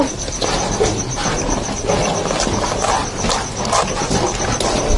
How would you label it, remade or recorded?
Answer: recorded